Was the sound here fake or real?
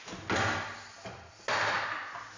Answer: real